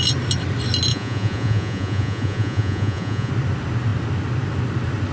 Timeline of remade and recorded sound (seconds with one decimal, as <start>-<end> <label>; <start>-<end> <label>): 0.0-0.9 recorded; 0.9-3.3 remade; 3.3-5.1 recorded